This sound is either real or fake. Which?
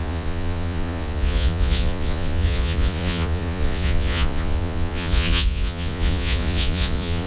fake